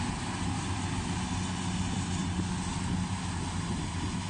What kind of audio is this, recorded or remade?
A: recorded